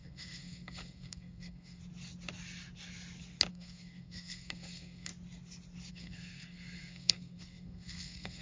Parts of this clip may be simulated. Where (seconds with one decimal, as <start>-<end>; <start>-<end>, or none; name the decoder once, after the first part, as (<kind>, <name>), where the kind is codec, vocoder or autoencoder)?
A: 0.0-1.8 (codec, SNAC); 3.5-5.1; 5.9-8.4